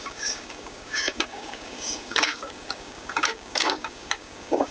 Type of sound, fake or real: fake